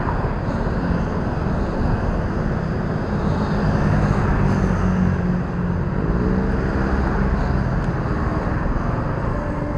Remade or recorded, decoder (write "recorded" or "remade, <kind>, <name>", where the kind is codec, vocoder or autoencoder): recorded